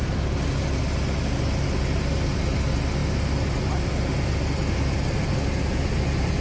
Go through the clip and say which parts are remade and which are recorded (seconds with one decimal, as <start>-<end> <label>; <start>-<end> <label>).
0.0-6.4 recorded